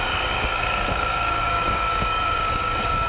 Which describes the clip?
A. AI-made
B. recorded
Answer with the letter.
A